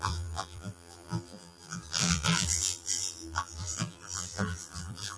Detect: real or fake fake